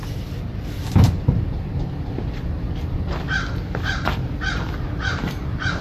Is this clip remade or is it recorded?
remade